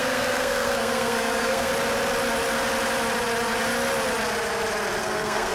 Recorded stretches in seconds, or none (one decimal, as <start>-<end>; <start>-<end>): 1.7-5.0